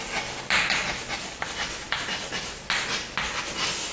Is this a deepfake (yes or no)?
no